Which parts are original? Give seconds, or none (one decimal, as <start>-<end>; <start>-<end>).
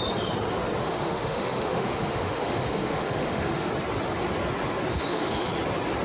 0.0-0.8; 3.7-4.9; 5.5-6.0